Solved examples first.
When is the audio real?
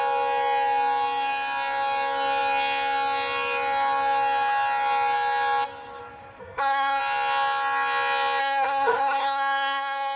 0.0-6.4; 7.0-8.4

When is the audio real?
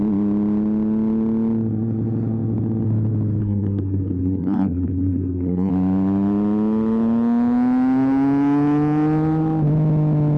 0.0-3.4; 5.7-10.4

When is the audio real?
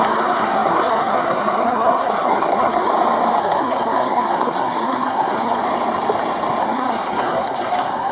2.9-3.4; 5.6-6.6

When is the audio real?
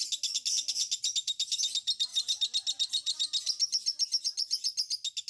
0.0-5.3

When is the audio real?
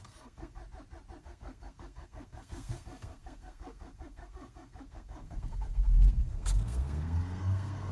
0.6-1.2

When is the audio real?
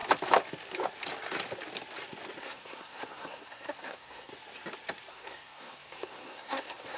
0.0-2.4; 4.3-5.1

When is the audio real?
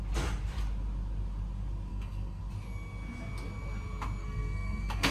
0.0-1.9; 2.4-4.2